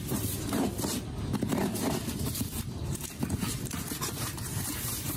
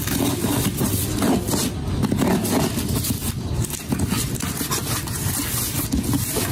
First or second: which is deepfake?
first